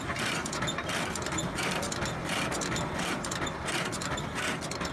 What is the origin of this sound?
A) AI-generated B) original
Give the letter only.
B